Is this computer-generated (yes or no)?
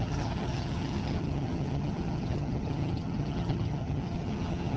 yes